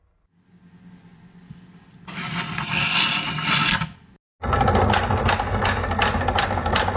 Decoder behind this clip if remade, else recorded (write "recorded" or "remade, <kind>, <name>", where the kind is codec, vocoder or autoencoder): recorded